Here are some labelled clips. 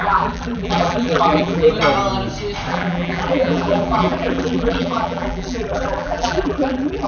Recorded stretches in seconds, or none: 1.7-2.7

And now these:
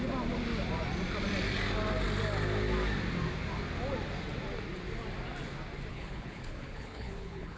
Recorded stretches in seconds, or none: 0.0-5.9

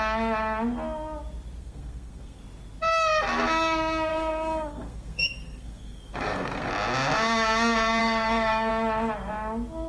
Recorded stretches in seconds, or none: 0.0-1.6; 2.4-4.1; 6.7-8.0; 8.7-9.9

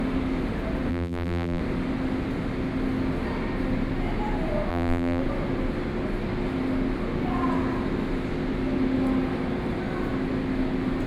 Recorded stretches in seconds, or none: 0.0-0.9; 1.6-4.7; 5.2-11.1

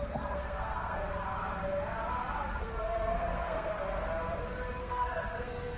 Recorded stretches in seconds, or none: 1.0-2.6; 3.7-4.8

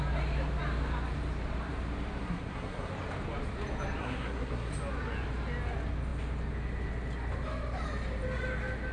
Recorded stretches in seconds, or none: 0.0-2.2; 2.9-4.0; 4.7-8.9